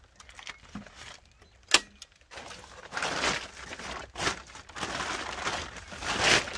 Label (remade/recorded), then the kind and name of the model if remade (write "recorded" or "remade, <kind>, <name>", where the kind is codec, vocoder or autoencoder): recorded